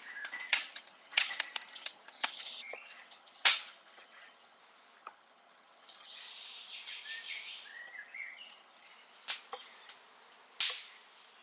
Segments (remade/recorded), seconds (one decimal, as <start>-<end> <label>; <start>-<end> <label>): 0.0-0.5 recorded; 0.5-4.6 remade; 4.6-5.0 recorded; 5.0-6.2 remade; 6.2-7.7 recorded; 7.7-8.9 remade; 8.9-11.4 recorded